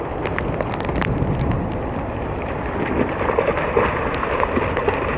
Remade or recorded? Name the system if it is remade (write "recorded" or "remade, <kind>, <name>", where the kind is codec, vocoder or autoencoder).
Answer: recorded